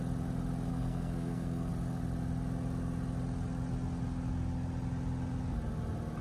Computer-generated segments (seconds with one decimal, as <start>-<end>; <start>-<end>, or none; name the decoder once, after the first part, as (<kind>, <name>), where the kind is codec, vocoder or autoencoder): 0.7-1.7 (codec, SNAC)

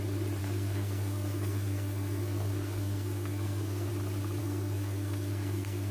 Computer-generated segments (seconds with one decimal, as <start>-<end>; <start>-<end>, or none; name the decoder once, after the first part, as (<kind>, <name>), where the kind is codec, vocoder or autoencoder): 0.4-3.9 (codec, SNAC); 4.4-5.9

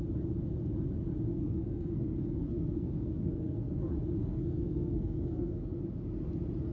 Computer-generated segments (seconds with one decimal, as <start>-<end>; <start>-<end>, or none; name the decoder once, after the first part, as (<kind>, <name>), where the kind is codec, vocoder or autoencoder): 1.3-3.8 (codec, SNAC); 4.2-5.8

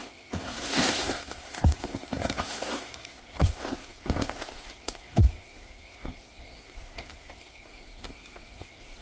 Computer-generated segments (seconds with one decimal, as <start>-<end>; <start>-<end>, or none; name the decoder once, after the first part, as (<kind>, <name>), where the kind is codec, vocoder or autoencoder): 0.0-9.0 (codec, SNAC)

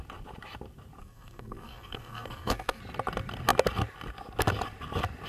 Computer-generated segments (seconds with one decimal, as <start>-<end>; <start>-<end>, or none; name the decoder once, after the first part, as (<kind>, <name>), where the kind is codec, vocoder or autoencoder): 1.0-2.8 (codec, SNAC)

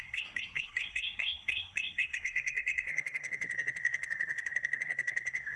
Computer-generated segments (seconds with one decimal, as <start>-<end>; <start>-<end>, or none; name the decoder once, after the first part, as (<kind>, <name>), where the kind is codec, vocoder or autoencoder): 0.0-5.6 (codec, SNAC)

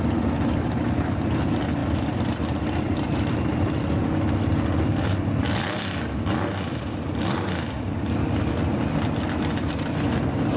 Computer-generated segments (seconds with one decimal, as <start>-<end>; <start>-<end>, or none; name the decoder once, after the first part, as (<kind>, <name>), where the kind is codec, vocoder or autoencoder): none